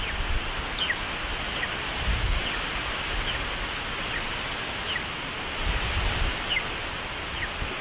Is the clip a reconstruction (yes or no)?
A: no